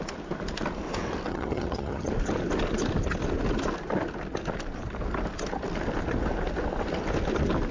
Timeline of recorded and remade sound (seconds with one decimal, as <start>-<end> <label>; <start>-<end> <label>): 0.0-1.3 recorded; 1.3-2.1 remade; 2.1-7.7 recorded